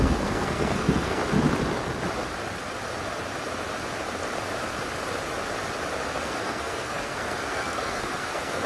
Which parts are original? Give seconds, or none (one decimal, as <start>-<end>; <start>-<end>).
1.2-6.2